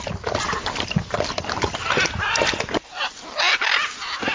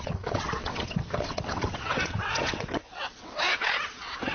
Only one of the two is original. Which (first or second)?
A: first